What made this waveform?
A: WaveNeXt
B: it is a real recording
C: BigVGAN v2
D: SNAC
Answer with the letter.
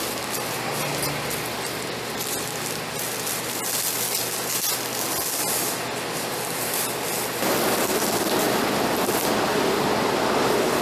B